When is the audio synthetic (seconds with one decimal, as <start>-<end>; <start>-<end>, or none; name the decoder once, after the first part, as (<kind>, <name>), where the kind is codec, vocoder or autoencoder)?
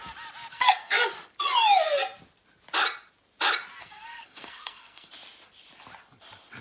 0.5-1.1 (codec, SNAC); 3.8-5.1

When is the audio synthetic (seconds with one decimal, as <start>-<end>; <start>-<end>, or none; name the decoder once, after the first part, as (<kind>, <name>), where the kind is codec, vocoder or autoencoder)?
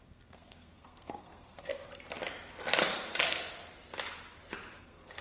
0.0-1.7 (codec, SNAC); 4.8-5.2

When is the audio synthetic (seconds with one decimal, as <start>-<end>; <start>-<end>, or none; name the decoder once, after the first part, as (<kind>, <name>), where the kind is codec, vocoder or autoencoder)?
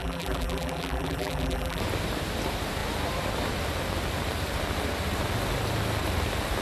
0.0-1.8 (vocoder, BigVGAN v2)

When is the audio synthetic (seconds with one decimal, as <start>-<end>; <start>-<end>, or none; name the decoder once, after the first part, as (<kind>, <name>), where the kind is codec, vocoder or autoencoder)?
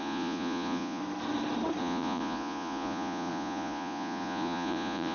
0.0-1.0 (vocoder, Vocos); 1.8-5.1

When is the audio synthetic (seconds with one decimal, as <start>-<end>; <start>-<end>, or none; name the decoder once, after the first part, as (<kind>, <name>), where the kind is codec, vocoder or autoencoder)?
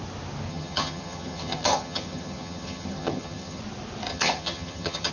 0.5-3.6 (vocoder, HiFi-GAN); 4.1-5.1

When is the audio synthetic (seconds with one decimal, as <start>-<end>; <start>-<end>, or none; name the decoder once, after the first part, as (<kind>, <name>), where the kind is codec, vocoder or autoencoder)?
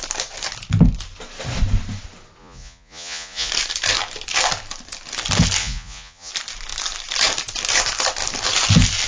2.4-3.5 (vocoder, Vocos); 5.6-6.3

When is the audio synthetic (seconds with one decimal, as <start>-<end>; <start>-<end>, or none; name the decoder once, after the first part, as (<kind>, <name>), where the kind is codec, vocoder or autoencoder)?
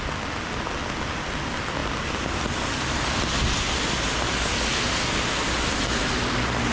none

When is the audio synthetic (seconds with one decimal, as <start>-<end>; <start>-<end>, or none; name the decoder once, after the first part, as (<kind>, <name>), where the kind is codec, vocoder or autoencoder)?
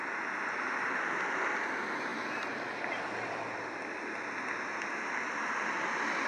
none